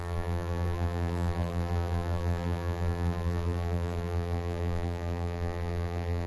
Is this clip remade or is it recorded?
remade